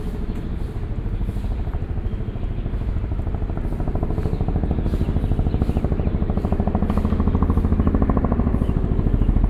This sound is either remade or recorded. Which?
recorded